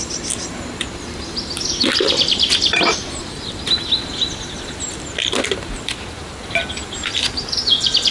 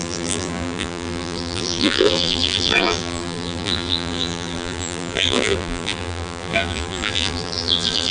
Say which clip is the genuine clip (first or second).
first